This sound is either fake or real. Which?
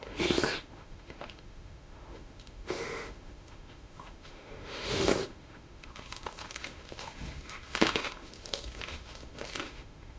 fake